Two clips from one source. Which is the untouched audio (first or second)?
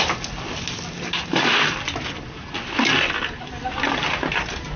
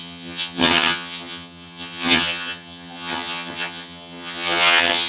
first